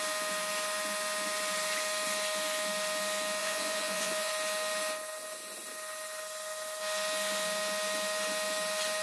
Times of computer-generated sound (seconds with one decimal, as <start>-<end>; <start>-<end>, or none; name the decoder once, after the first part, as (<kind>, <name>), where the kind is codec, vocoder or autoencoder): 3.4-4.3 (vocoder, Vocos)